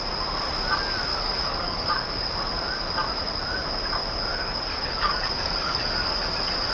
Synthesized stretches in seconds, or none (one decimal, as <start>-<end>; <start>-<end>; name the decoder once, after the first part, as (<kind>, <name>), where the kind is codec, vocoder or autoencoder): 1.1-2.2 (codec, DAC); 4.3-6.2